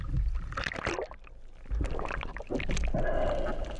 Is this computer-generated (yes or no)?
no